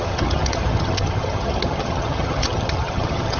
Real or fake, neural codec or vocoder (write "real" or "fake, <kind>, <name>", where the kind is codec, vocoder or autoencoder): fake, vocoder, HiFi-GAN